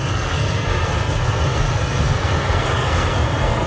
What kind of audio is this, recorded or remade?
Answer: remade